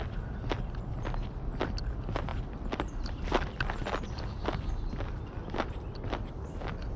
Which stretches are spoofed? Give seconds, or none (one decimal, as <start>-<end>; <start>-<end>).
none